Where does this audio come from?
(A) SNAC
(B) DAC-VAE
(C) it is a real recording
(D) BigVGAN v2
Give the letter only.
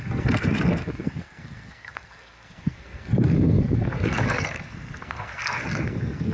A